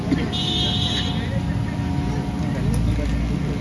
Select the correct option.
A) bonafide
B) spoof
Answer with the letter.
A